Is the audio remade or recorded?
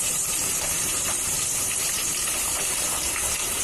remade